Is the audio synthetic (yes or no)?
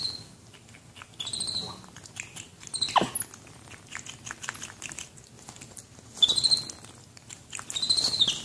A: no